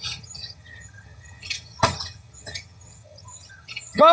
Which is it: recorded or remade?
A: remade